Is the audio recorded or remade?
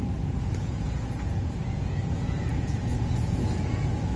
remade